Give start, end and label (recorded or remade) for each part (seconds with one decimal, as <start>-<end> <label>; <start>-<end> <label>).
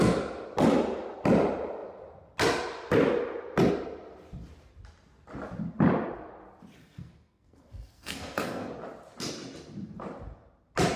0.0-6.8 recorded; 6.8-8.7 remade; 8.7-11.0 recorded